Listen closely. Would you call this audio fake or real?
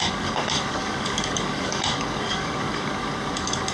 fake